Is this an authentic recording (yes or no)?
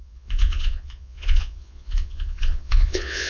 no